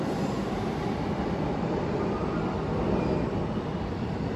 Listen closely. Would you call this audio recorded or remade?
recorded